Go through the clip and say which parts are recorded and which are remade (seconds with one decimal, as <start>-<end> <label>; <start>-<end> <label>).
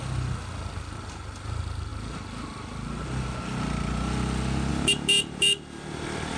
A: 0.0-6.4 recorded